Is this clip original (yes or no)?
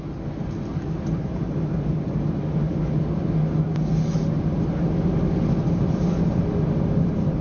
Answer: yes